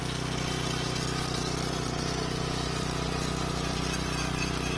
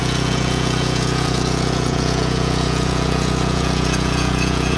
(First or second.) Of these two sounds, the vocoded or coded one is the second